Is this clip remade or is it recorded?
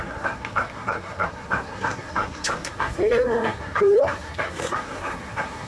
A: remade